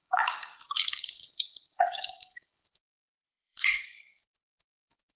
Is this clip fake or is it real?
fake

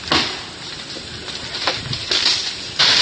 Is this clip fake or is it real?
real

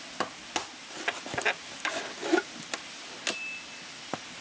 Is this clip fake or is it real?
real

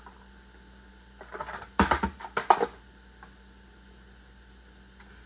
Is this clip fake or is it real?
real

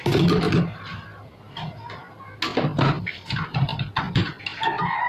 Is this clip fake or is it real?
real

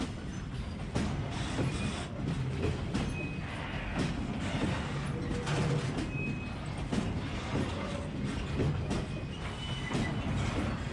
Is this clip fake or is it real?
real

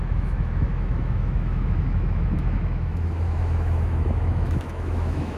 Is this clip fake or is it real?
fake